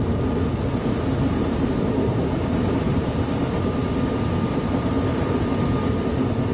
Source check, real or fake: real